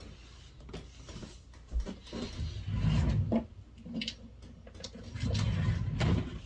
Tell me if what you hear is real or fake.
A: real